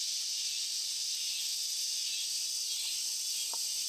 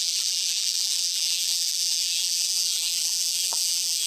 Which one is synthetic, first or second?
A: second